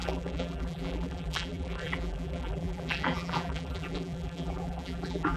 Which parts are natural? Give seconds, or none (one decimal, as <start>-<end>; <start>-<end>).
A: none